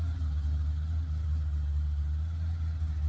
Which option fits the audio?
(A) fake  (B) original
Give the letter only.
B